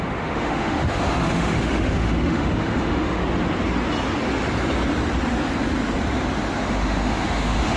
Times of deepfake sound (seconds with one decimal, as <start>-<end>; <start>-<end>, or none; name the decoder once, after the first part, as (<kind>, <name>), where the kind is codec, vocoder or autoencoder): 0.0-3.2 (autoencoder, DAC-VAE); 6.6-7.8